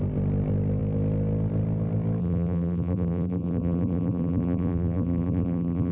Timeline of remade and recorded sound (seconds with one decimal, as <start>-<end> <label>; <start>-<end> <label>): 0.0-2.2 recorded; 2.2-5.9 remade